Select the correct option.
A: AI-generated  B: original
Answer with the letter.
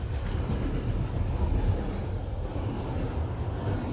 B